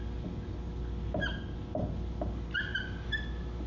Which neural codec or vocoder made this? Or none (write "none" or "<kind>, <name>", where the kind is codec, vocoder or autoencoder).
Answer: none